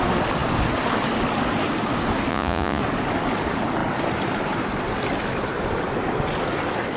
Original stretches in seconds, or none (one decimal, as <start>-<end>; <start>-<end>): 0.0-2.3; 2.8-7.0